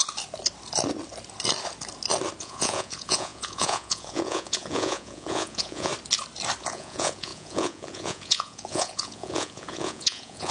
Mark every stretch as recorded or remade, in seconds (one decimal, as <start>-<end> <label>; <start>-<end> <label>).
0.0-2.4 recorded; 2.4-5.9 remade; 5.9-6.6 recorded; 6.6-10.5 remade